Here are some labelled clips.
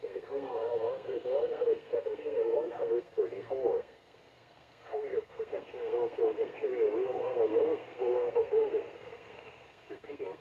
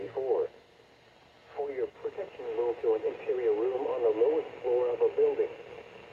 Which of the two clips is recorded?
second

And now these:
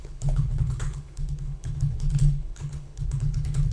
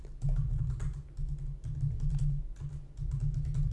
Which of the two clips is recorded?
second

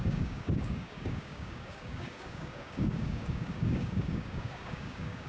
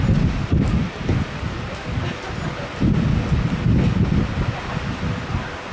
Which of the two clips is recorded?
second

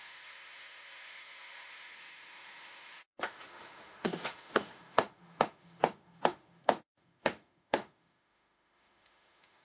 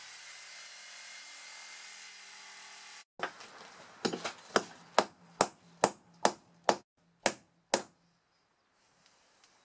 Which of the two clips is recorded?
second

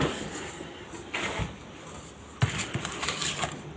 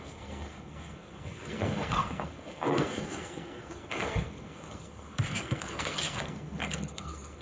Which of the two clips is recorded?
first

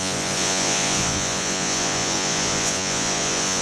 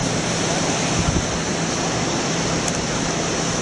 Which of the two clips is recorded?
second